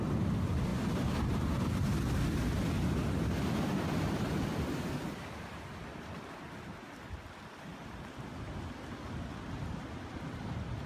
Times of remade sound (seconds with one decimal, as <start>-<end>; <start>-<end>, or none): none